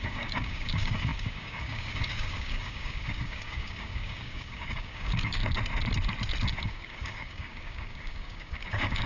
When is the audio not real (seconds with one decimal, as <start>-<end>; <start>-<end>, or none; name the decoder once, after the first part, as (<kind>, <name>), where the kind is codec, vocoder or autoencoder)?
0.0-5.4 (codec, DAC); 6.6-9.1